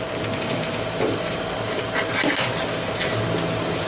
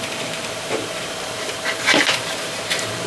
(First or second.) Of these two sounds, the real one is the first